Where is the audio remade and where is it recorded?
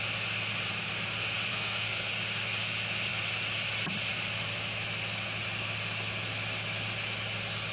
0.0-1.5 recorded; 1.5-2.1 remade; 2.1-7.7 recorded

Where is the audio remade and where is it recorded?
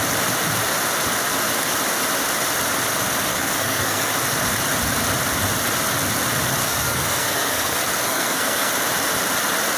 0.0-3.3 recorded; 3.3-4.1 remade; 4.1-6.6 recorded; 6.6-8.7 remade; 8.7-9.8 recorded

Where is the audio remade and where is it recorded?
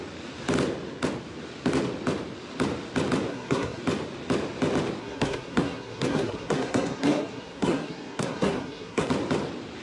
0.0-3.3 recorded; 3.3-3.8 remade; 3.8-5.0 recorded; 5.0-9.1 remade; 9.1-9.8 recorded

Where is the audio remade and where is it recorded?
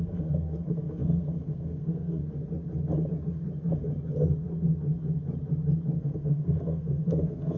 0.0-2.2 remade; 2.2-6.0 recorded; 6.0-7.6 remade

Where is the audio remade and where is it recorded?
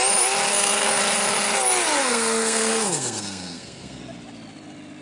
0.0-0.5 recorded; 0.5-1.0 remade; 1.0-2.0 recorded; 2.0-4.0 remade; 4.0-5.0 recorded